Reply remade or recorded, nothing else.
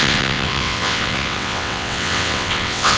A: remade